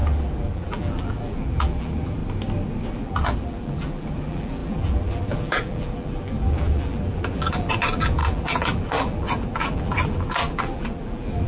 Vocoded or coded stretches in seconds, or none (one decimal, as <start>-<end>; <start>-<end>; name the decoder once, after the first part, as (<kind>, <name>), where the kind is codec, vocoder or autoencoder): 0.0-2.2 (vocoder, BigVGAN v2); 2.9-11.5